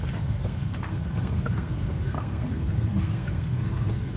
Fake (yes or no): yes